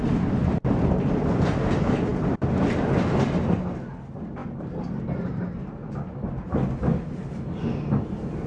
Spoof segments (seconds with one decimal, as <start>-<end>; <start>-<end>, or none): none